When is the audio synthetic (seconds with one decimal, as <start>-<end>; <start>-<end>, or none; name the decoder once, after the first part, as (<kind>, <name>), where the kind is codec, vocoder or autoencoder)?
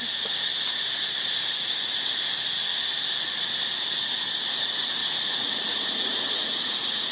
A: 5.0-7.1 (vocoder, Vocos)